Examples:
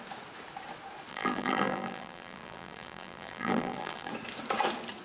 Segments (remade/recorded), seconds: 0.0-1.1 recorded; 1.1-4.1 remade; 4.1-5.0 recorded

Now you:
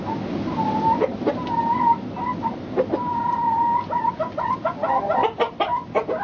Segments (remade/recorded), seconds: 0.0-6.2 recorded

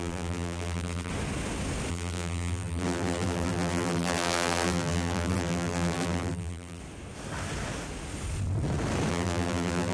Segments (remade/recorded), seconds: 0.0-1.1 remade; 1.1-1.9 recorded; 1.9-6.8 remade; 6.8-9.1 recorded; 9.1-9.9 remade

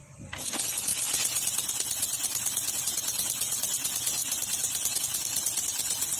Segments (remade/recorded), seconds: 0.0-4.2 recorded; 4.2-5.0 remade; 5.0-6.2 recorded

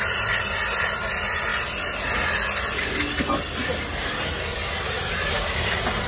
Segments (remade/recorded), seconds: 0.0-4.0 recorded; 4.0-5.5 remade; 5.5-6.1 recorded

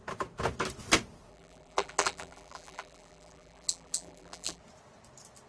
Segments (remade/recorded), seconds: 0.0-1.3 recorded; 1.3-4.6 remade; 4.6-5.5 recorded

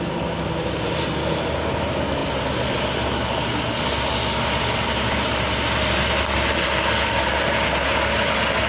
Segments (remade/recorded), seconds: 0.0-0.6 recorded; 0.6-1.1 remade; 1.1-8.7 recorded

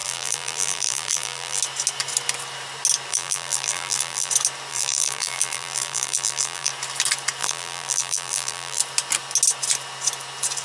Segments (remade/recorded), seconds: 0.0-1.6 remade; 1.6-3.1 recorded; 3.1-4.3 remade; 4.3-4.7 recorded; 4.7-6.7 remade; 6.7-7.4 recorded; 7.4-8.8 remade; 8.8-10.6 recorded